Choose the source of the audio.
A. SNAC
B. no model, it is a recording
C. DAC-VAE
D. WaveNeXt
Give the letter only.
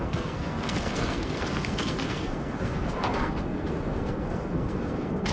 A